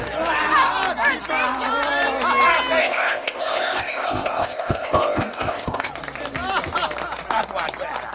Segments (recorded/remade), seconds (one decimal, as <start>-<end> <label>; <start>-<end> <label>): 0.0-2.8 recorded; 2.8-5.9 remade; 5.9-8.1 recorded